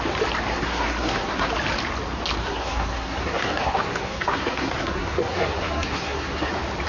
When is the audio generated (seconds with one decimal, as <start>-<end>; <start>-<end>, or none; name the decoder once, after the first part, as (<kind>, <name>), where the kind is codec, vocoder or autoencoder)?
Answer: 0.5-1.5 (codec, SNAC); 2.4-6.5